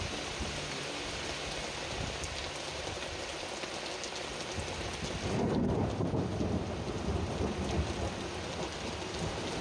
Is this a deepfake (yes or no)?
no